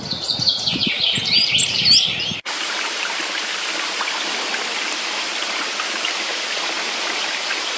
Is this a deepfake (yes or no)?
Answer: yes